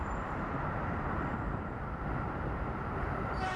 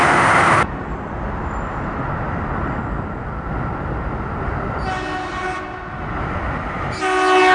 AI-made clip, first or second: first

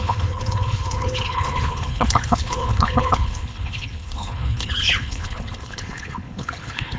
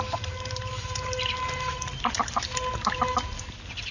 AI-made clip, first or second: first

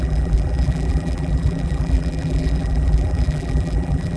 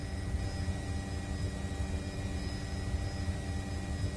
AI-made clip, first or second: first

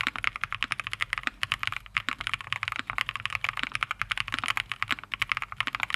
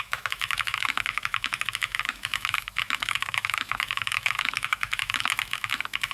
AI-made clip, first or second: second